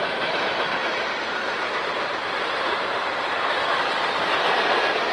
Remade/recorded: remade